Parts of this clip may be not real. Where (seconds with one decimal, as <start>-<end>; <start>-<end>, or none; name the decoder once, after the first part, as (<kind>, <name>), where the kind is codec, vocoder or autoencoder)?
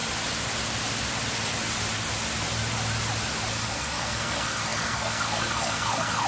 3.5-6.3 (codec, SNAC)